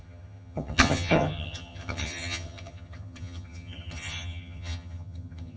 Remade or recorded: remade